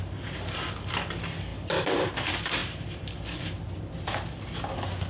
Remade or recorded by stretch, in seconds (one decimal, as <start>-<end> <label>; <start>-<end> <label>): 0.0-1.5 recorded; 1.5-2.1 remade; 2.1-5.1 recorded